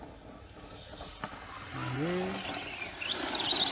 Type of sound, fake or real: real